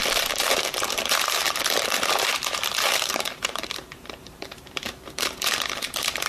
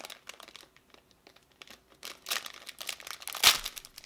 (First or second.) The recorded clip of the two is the second